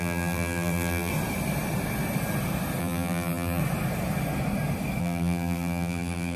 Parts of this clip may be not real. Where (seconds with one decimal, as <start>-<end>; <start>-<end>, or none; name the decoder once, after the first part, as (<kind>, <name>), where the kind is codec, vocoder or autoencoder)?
0.0-1.1 (vocoder, BigVGAN v2); 2.8-3.6; 5.0-6.4